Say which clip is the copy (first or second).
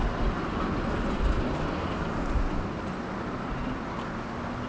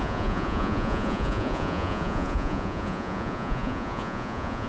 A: second